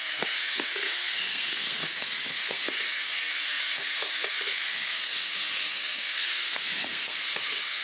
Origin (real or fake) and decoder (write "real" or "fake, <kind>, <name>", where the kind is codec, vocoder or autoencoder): fake, codec, SNAC